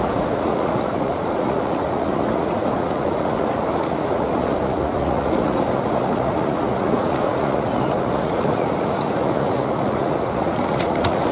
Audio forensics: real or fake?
fake